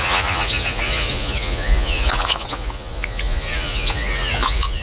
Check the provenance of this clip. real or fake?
fake